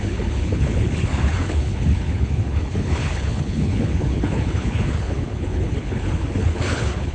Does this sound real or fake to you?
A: fake